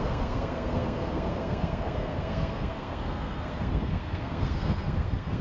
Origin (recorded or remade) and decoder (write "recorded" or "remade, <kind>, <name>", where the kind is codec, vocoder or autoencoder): remade, codec, SNAC